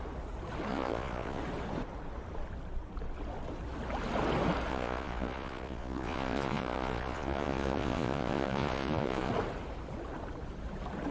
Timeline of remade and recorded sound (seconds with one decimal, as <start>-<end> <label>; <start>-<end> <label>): 0.0-0.7 recorded; 0.7-1.4 remade; 1.4-4.7 recorded; 4.7-9.3 remade; 9.3-11.1 recorded